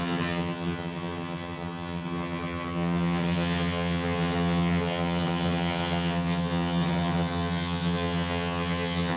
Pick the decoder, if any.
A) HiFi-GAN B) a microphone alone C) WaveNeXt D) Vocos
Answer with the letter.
A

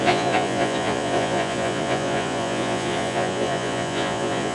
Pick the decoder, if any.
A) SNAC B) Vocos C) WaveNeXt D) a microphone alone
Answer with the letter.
B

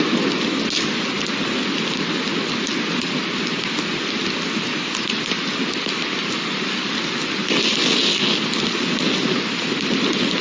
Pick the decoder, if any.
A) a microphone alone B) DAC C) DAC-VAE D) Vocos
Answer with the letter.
A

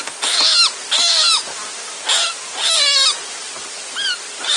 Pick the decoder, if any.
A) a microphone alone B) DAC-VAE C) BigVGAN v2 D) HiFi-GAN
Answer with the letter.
A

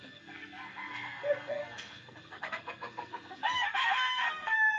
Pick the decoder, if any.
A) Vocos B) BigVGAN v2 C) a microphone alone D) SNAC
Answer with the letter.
D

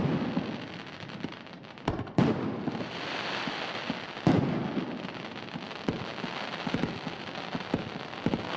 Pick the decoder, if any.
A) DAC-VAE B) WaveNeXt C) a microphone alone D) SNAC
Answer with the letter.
C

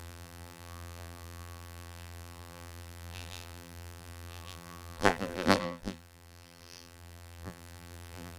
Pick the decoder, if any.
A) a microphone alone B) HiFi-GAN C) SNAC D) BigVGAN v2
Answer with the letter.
D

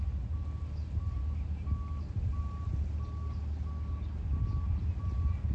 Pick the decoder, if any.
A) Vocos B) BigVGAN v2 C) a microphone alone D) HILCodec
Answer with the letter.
C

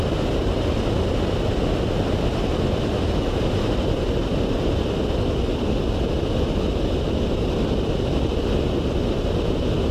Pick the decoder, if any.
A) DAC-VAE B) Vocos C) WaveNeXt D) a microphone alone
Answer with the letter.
D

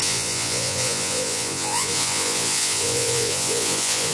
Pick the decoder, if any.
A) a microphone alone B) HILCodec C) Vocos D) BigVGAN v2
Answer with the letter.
C